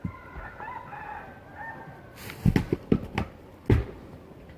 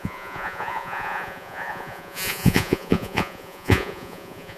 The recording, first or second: first